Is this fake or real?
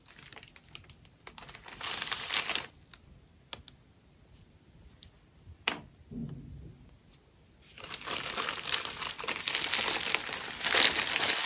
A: real